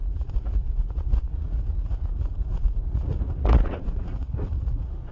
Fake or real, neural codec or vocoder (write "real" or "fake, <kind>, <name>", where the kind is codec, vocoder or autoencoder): fake, vocoder, Vocos